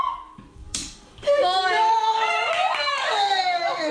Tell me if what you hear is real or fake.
fake